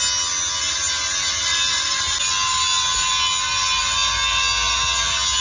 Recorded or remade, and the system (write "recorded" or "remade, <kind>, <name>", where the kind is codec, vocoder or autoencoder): recorded